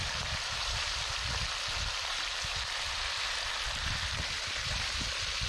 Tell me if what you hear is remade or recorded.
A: remade